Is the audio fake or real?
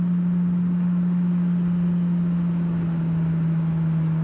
real